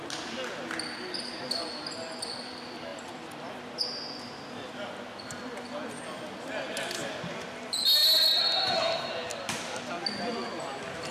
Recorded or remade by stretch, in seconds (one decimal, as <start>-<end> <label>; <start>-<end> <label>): 0.0-11.1 recorded